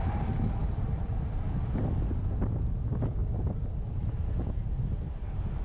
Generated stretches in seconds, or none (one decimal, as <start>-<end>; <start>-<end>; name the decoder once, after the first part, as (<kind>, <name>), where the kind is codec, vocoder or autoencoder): 0.6-2.2 (vocoder, BigVGAN v2); 3.2-5.0